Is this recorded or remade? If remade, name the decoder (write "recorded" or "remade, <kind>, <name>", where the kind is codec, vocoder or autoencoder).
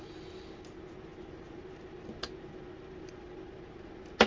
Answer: recorded